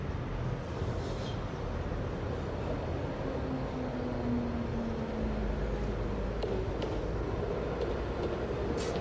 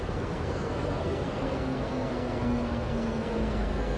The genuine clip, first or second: first